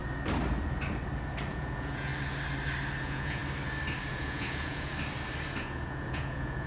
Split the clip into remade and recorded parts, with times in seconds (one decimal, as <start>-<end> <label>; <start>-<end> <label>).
0.0-1.5 recorded; 1.5-2.1 remade; 2.1-3.0 recorded; 3.0-3.4 remade; 3.4-4.1 recorded; 4.1-4.9 remade; 4.9-5.6 recorded; 5.6-6.7 remade